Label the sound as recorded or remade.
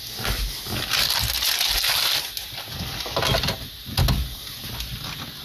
recorded